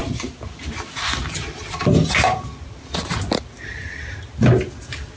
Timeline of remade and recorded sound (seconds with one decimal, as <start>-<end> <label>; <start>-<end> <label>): 0.0-5.2 recorded